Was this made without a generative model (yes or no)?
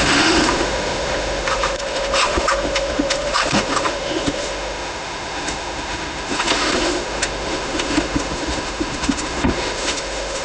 no